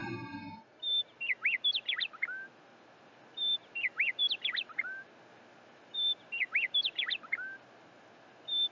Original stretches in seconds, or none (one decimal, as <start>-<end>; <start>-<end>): 0.0-8.7